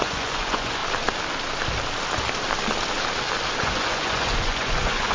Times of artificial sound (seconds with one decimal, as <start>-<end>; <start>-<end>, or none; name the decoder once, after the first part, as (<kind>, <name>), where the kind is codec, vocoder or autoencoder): 0.0-0.8 (vocoder, Vocos); 3.6-5.1